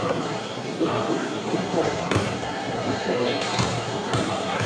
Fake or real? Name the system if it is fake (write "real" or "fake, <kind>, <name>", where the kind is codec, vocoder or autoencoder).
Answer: fake, codec, SNAC